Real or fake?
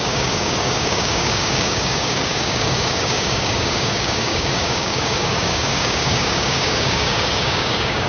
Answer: fake